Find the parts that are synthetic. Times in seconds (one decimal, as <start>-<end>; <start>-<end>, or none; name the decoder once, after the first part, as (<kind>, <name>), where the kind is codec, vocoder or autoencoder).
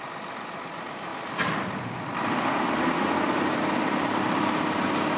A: 1.1-4.2 (vocoder, BigVGAN v2)